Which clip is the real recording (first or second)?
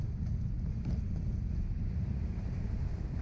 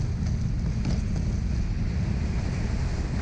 second